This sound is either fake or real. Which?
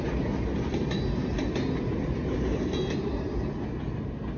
real